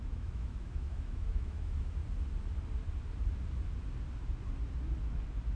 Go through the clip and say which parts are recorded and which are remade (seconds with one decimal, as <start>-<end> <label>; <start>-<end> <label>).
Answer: 0.0-2.0 remade; 2.0-5.6 recorded